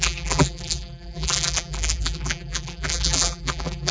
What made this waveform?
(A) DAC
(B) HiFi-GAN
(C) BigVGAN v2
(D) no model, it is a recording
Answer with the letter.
C